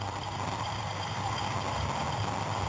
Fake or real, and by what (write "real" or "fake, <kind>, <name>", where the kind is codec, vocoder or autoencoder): fake, vocoder, BigVGAN v2